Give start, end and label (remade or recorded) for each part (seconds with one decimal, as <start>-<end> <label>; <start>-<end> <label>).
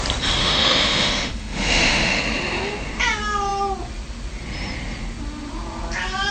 0.0-0.4 recorded; 0.4-2.2 remade; 2.2-6.3 recorded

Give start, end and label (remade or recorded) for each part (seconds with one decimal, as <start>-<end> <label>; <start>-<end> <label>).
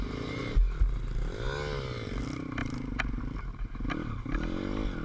0.0-2.6 recorded; 2.6-3.2 remade; 3.2-5.0 recorded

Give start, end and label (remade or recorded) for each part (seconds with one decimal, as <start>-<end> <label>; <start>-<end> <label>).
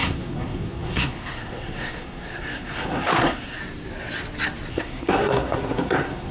0.0-3.6 remade; 3.6-4.7 recorded; 4.7-6.3 remade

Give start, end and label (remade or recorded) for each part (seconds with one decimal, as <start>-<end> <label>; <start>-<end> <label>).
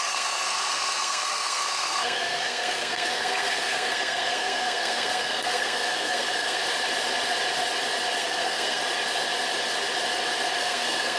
0.0-6.6 remade; 6.6-8.2 recorded; 8.2-8.8 remade; 8.8-10.6 recorded; 10.6-11.2 remade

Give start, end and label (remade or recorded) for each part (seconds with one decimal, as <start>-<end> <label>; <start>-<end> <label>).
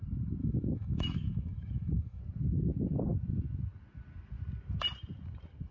0.0-0.4 recorded; 0.4-2.2 remade; 2.2-5.7 recorded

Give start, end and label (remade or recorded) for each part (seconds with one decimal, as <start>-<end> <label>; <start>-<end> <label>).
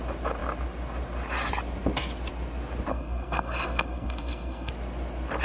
0.0-2.9 recorded; 2.9-4.7 remade; 4.7-5.4 recorded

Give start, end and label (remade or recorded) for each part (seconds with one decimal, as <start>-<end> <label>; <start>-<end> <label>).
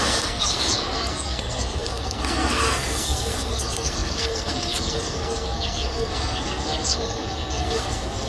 0.0-8.3 remade